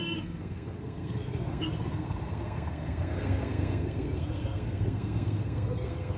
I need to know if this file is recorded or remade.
remade